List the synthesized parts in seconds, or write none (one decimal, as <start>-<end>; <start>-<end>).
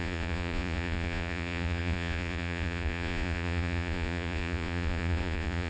0.0-5.7